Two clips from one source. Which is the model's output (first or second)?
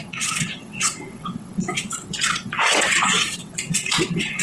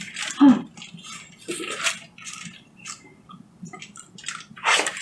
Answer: first